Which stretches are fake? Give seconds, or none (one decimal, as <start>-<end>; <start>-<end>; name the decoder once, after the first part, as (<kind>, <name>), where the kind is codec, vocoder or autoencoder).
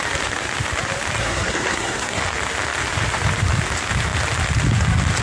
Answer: 1.2-2.2 (codec, SNAC)